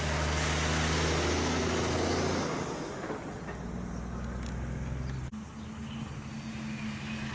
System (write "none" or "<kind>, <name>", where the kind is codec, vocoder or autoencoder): none